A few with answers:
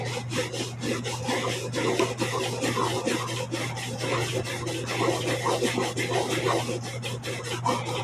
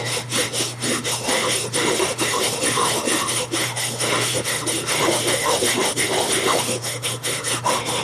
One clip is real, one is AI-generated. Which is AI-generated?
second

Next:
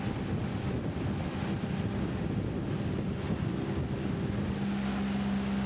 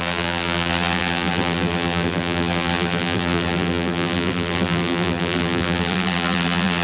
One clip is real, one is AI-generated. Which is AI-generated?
second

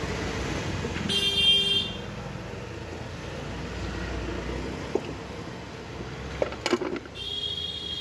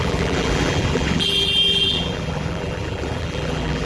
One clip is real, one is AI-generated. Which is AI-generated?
second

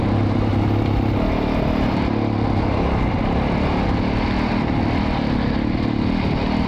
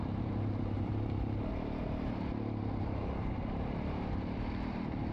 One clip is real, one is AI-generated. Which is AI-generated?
second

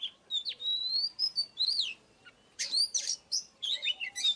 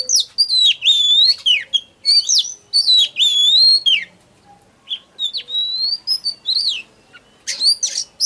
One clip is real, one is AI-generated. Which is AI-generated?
first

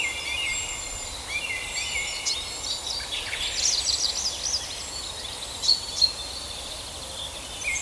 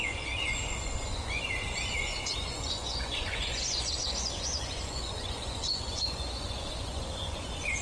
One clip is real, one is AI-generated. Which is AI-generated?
second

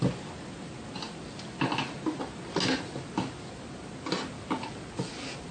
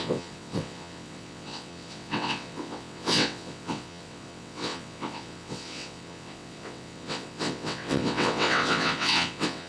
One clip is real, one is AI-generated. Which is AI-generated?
second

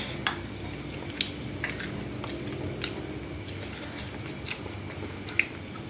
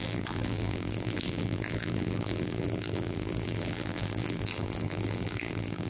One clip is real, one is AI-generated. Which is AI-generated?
second